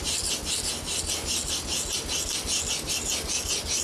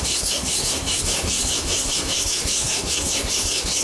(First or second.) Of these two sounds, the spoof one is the second